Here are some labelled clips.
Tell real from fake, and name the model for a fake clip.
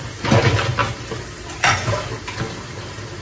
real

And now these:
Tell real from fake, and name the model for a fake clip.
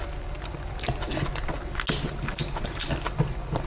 real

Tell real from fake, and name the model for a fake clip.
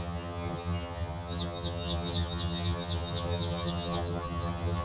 fake, vocoder, HiFi-GAN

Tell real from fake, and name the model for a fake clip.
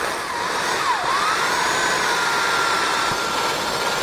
real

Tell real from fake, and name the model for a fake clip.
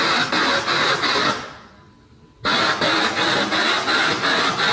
real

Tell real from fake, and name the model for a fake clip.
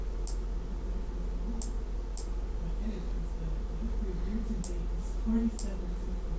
real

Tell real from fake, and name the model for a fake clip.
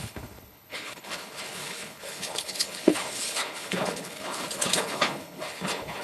fake, codec, HILCodec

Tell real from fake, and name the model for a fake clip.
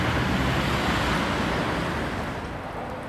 real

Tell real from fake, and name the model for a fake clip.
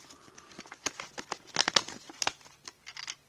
real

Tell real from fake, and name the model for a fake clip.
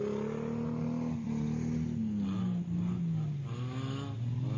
real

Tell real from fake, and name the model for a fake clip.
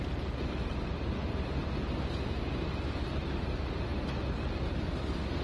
real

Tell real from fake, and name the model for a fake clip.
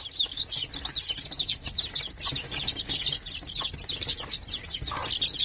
real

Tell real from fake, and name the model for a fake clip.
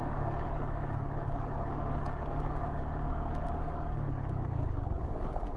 fake, codec, DAC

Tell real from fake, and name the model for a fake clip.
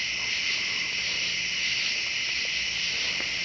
real